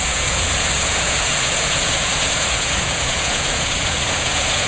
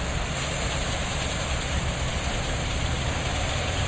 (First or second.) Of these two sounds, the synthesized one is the first